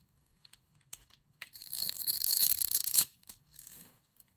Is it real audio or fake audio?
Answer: fake